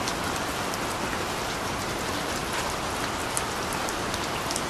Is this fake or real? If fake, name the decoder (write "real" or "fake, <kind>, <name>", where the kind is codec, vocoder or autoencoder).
real